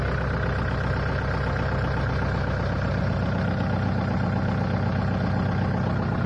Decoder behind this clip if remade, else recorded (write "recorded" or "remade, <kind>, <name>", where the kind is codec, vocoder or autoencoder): recorded